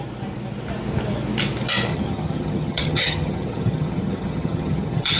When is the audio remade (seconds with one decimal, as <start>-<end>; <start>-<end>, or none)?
1.9-5.2